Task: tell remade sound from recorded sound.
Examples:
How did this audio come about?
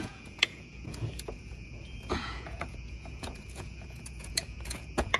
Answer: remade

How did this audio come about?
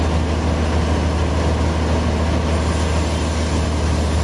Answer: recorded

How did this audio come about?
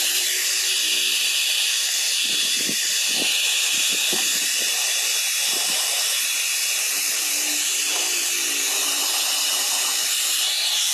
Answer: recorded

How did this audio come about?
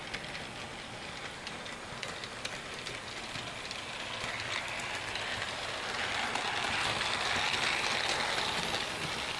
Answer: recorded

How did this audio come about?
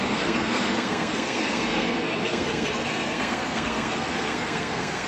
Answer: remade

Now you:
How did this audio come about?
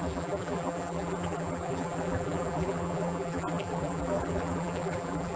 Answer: remade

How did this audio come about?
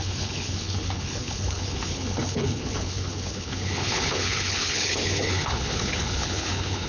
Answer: remade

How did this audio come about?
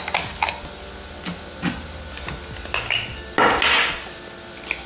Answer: recorded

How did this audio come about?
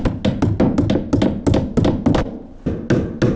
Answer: recorded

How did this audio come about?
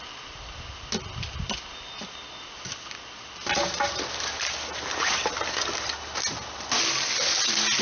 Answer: recorded